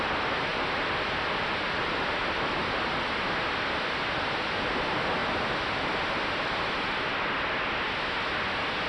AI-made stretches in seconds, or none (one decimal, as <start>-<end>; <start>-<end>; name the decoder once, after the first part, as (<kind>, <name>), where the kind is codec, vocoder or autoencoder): 0.5-1.9 (vocoder, BigVGAN v2)

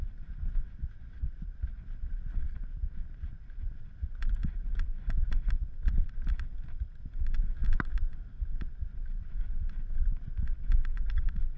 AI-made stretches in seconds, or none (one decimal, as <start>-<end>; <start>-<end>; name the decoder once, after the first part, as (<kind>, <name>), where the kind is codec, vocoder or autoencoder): none

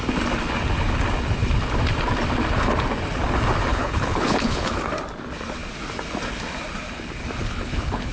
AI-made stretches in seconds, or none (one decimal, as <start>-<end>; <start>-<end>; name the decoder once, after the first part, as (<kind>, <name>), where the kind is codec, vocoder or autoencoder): 3.7-4.8 (codec, HILCodec); 7.4-8.1